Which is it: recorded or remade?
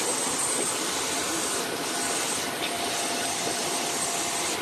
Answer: recorded